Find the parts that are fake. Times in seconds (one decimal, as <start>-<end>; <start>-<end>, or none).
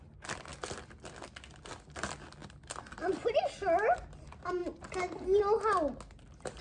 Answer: none